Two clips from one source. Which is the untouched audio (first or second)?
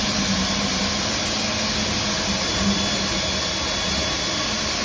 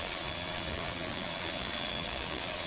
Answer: first